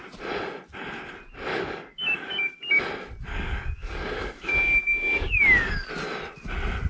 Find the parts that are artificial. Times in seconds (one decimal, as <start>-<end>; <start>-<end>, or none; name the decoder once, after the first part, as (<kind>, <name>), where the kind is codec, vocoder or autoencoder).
1.5-2.8 (codec, DAC); 3.3-5.9